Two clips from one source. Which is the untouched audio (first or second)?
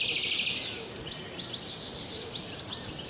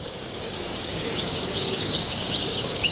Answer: first